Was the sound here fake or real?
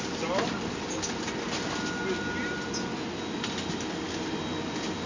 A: real